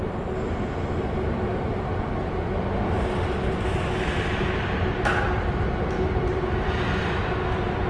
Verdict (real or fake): real